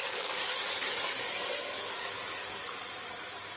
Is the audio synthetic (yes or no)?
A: yes